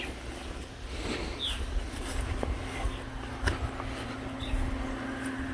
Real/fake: real